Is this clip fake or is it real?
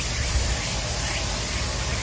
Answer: real